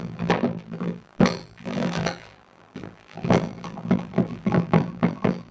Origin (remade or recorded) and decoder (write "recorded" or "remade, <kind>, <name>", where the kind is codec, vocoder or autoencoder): remade, vocoder, BigVGAN v2